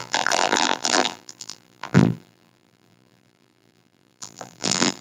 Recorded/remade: remade